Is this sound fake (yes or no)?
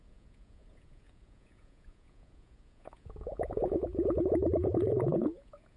yes